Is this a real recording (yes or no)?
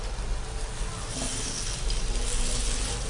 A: yes